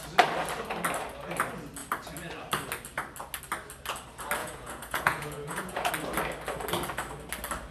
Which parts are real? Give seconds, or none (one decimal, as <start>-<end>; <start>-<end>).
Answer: 0.0-4.4; 5.9-7.7